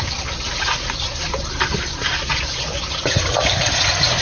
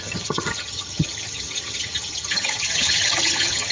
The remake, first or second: second